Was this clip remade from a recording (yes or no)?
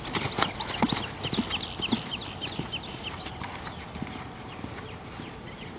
no